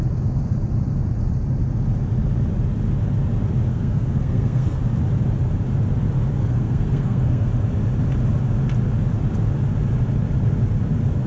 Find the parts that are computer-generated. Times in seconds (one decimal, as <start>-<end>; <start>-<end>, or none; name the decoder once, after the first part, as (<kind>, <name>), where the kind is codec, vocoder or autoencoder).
3.7-4.8 (codec, SNAC); 6.4-7.5